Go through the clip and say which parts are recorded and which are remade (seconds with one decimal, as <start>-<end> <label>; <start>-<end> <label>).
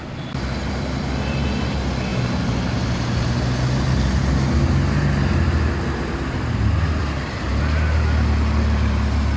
0.0-9.4 recorded